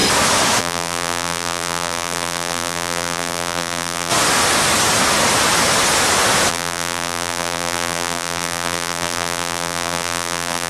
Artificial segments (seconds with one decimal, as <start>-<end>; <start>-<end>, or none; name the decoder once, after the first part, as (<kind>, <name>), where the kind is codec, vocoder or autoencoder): 0.6-4.1 (vocoder, BigVGAN v2); 6.5-10.7